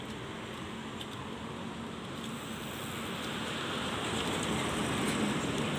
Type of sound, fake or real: real